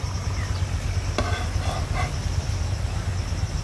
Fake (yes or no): no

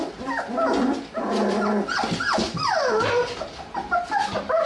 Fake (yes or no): no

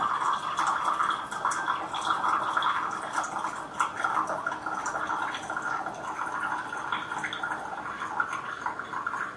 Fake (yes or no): no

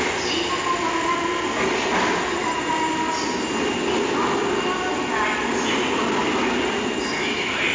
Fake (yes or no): no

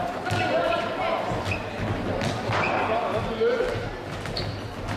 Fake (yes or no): no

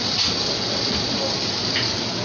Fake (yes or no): no